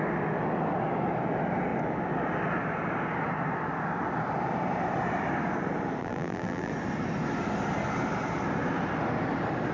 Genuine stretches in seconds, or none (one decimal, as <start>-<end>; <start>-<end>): 0.0-6.0; 6.7-9.7

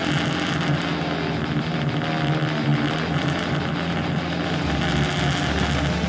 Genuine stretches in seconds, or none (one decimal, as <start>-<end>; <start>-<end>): 0.0-6.1

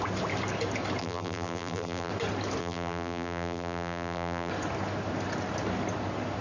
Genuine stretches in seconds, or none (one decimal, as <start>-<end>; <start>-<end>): 0.0-1.0; 2.1-2.6; 4.5-6.4

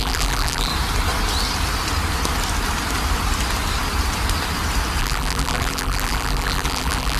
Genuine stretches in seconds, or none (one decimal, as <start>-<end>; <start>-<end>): 0.7-5.0

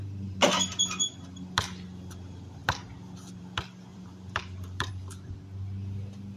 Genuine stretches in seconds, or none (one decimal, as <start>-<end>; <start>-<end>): 0.0-3.9; 4.9-6.4

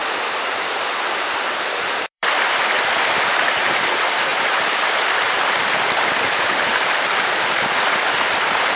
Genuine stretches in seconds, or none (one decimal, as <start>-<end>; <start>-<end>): 3.4-4.3; 7.0-8.8

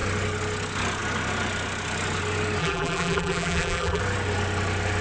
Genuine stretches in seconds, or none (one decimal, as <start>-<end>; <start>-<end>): 0.0-2.6; 4.0-5.0